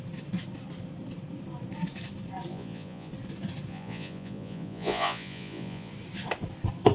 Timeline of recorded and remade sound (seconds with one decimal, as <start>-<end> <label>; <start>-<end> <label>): 0.0-2.5 recorded; 2.5-3.1 remade; 3.1-3.7 recorded; 3.7-5.9 remade; 5.9-6.9 recorded